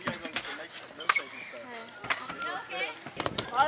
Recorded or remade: recorded